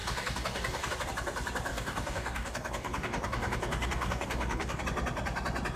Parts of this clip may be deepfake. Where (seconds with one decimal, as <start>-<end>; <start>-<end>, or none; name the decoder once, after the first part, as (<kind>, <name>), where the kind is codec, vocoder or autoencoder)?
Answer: 0.0-0.9 (codec, DAC); 1.7-4.8